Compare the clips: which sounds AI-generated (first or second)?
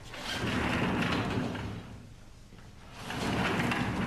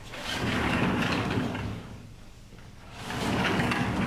second